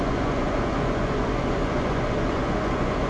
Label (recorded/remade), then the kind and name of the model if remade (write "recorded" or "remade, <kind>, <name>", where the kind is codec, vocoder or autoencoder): remade, vocoder, Vocos